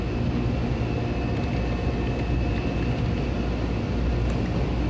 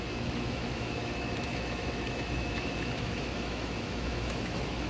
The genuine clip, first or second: first